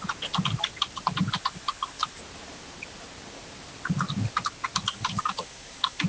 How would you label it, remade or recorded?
recorded